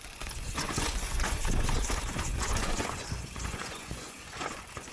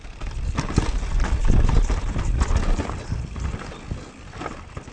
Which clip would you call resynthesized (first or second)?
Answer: first